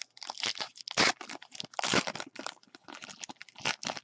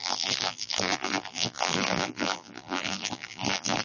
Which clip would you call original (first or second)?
first